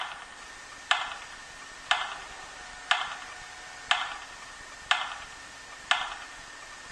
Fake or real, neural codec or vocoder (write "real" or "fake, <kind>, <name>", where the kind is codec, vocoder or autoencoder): real